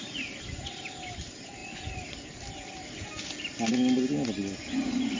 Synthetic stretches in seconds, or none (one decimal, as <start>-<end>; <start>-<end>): none